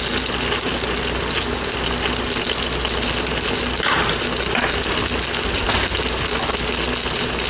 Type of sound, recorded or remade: recorded